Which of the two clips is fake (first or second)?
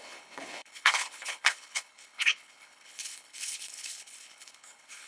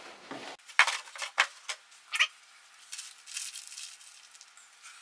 first